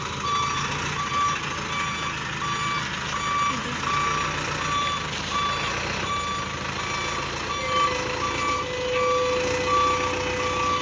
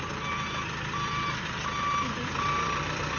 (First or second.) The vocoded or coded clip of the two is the second